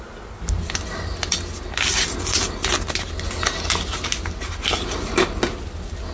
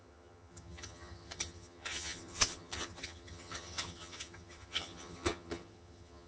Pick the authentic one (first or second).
first